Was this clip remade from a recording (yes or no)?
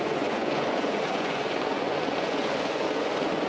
yes